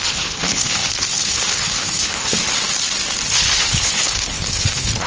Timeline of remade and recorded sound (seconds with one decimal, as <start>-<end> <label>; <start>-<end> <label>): 0.0-2.4 remade; 2.4-3.3 recorded; 3.3-5.1 remade